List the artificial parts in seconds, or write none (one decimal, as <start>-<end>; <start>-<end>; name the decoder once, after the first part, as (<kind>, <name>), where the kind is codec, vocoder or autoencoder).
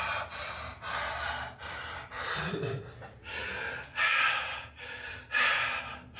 0.7-3.3 (vocoder, BigVGAN v2); 3.9-5.8